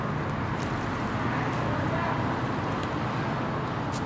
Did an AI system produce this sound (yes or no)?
no